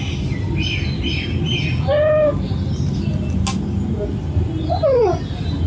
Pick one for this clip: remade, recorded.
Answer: recorded